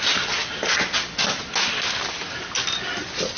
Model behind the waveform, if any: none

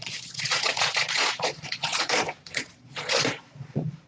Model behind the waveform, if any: vocoder, Vocos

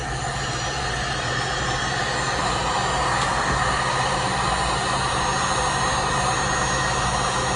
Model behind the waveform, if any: none